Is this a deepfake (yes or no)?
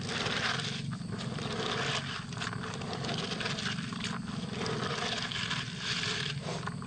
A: no